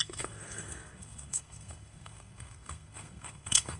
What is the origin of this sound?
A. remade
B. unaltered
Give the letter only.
A